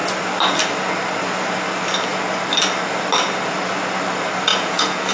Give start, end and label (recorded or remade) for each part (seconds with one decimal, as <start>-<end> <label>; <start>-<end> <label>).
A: 0.0-4.5 recorded; 4.5-5.1 remade